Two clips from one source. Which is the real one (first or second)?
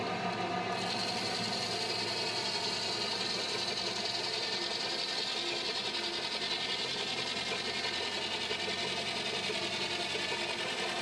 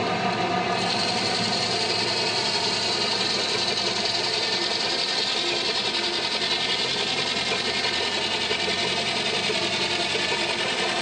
first